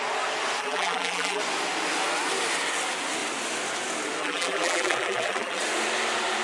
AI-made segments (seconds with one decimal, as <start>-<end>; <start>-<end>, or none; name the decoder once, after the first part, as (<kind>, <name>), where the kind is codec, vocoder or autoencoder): 0.6-1.4 (vocoder, BigVGAN v2); 4.2-5.6